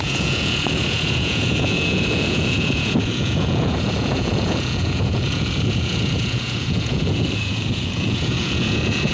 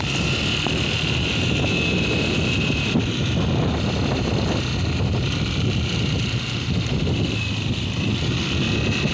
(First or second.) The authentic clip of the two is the second